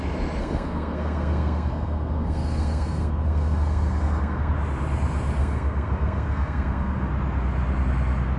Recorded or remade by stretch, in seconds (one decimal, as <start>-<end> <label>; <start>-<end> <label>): 0.0-0.4 recorded; 0.4-4.5 remade; 4.5-5.4 recorded; 5.4-7.1 remade; 7.1-8.4 recorded